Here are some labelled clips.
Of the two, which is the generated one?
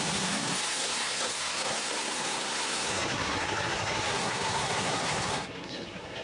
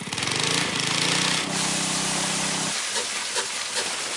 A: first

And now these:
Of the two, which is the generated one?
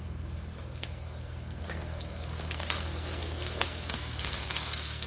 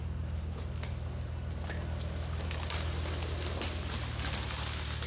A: first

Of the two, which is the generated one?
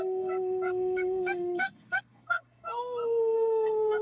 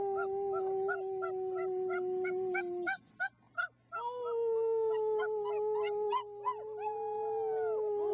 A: first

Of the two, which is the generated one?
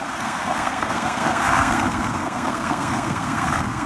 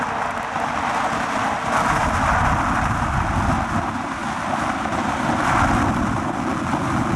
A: first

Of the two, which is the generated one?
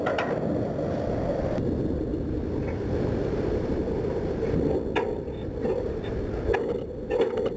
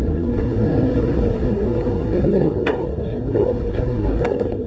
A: second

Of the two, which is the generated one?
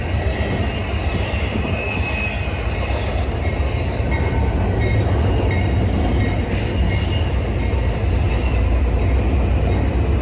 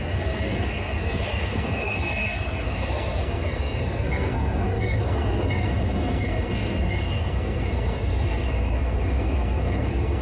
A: second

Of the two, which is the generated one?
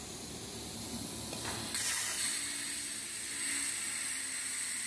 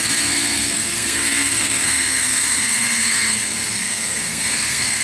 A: second